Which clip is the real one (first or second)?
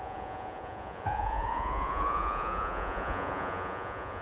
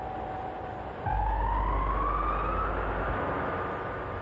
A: second